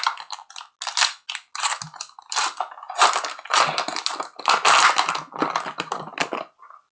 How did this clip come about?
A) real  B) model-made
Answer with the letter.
A